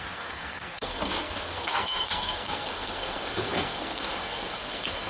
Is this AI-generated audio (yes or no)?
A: yes